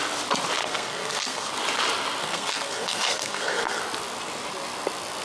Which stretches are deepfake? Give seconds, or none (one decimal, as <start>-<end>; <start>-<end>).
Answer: 0.6-1.5; 2.2-3.8